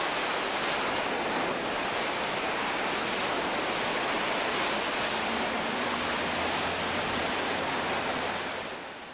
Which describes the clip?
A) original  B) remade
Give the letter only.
A